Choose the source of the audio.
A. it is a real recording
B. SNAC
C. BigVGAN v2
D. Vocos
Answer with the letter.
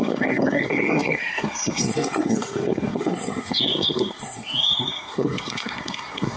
B